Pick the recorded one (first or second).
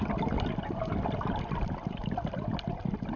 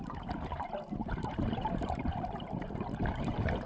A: first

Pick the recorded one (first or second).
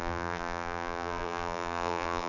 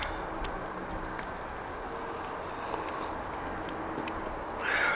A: second